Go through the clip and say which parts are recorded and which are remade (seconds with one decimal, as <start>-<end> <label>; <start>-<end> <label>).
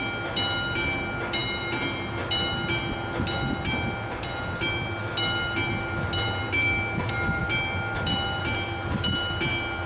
0.0-9.9 recorded